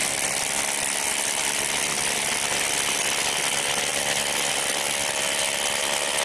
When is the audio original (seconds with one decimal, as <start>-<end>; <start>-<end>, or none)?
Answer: 0.0-6.2

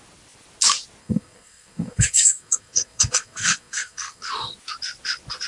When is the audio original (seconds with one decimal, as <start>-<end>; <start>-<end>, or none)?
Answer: 0.0-1.0; 4.3-5.5